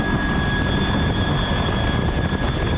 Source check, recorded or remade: recorded